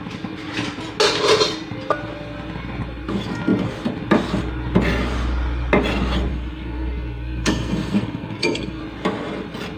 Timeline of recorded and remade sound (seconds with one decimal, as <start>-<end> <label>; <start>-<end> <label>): 0.0-6.3 recorded; 6.3-8.8 remade; 8.8-9.8 recorded